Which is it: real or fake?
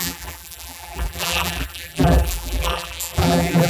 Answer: fake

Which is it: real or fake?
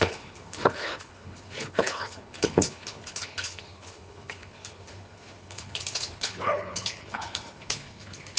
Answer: fake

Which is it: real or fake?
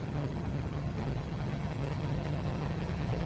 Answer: fake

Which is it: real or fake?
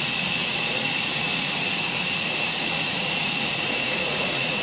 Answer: fake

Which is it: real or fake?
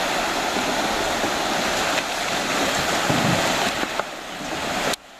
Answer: real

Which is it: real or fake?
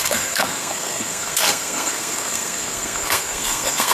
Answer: fake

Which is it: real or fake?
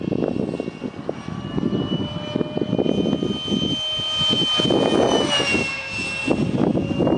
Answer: real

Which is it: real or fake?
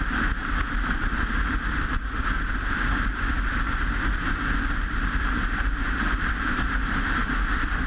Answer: real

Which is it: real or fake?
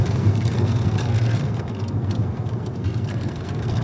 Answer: fake